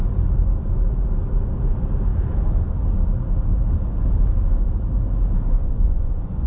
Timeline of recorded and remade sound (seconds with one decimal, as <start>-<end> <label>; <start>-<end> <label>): 0.0-5.6 recorded; 5.6-6.5 remade